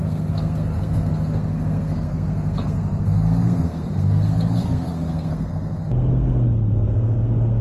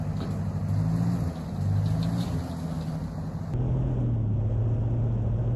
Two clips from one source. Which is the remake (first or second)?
first